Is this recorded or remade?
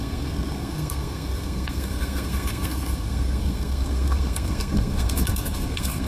remade